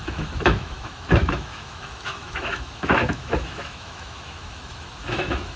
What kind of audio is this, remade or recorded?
remade